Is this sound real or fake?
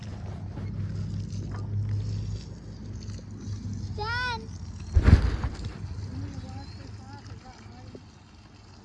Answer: real